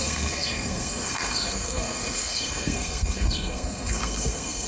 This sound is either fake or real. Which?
fake